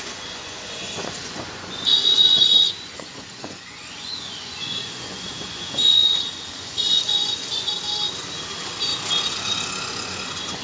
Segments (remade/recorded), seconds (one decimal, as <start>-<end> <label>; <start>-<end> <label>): 0.0-7.7 remade; 7.7-9.2 recorded; 9.2-10.6 remade